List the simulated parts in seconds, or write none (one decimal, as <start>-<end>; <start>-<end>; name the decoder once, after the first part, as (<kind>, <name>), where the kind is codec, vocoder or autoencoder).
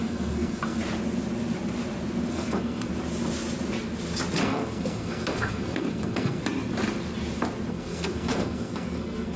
0.0-0.8 (codec, SNAC); 2.3-2.9; 4.4-6.4; 7.7-9.4